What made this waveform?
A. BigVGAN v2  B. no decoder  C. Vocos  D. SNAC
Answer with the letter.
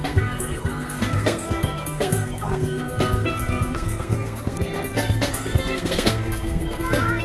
D